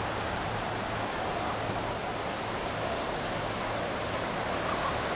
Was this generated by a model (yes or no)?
no